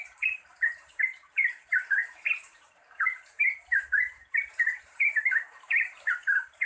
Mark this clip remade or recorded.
remade